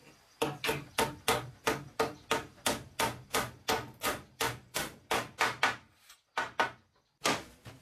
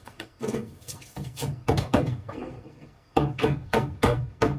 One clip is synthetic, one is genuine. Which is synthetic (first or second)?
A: second